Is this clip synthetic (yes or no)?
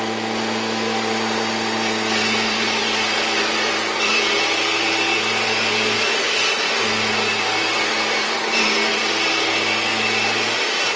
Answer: yes